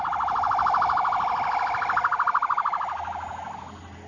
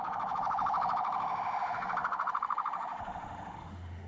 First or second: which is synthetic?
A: second